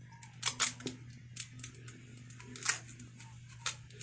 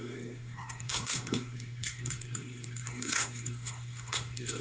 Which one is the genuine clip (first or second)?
first